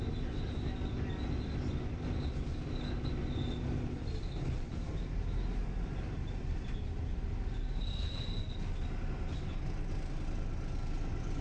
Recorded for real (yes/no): yes